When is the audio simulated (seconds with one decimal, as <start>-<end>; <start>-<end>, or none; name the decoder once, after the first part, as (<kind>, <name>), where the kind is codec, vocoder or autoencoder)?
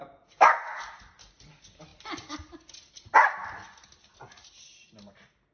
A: none